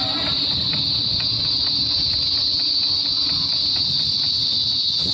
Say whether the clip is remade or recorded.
recorded